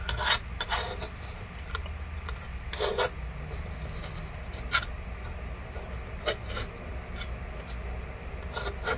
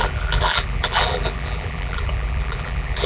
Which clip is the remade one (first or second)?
second